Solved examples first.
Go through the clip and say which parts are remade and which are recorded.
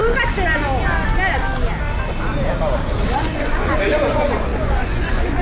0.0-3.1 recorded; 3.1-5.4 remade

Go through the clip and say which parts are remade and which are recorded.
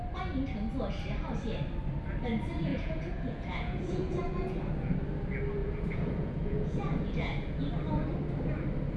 0.0-2.7 recorded; 2.7-4.7 remade; 4.7-5.6 recorded; 5.6-7.6 remade; 7.6-9.0 recorded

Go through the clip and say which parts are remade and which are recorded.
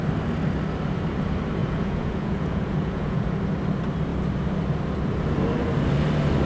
0.0-1.6 recorded; 1.6-3.4 remade; 3.4-6.4 recorded